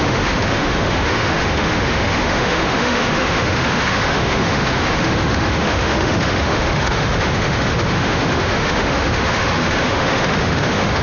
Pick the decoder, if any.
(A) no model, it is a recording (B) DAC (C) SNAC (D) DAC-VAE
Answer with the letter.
D